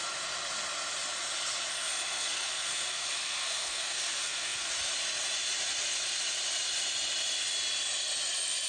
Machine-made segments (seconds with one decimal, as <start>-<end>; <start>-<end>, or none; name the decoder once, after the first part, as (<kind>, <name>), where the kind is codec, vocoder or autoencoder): 1.7-4.7 (codec, SNAC)